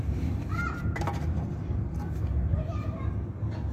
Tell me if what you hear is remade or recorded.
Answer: remade